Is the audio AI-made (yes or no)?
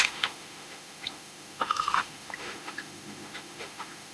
yes